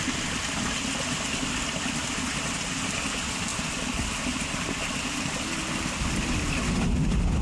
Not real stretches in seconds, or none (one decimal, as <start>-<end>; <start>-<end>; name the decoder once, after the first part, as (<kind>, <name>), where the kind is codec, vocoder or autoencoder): none